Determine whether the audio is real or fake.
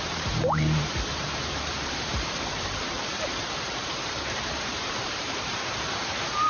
fake